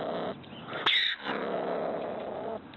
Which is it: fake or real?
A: real